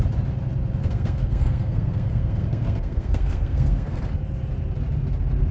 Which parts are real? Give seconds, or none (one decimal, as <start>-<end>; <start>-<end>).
0.0-0.8; 4.0-5.5